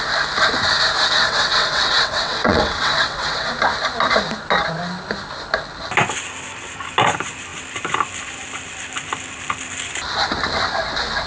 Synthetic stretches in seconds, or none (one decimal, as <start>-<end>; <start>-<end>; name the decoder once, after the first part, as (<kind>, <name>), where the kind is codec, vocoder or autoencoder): 1.2-3.5 (vocoder, WaveNeXt)